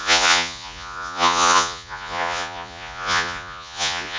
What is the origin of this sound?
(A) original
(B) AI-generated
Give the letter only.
B